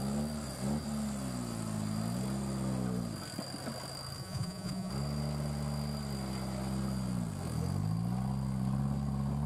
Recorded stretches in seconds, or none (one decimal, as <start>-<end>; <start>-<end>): 0.0-4.2; 4.9-9.5